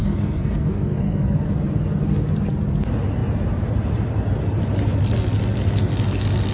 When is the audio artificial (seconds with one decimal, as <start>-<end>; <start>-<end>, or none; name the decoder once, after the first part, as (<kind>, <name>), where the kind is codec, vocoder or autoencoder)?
0.0-1.5 (codec, SNAC)